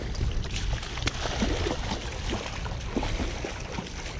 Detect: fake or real real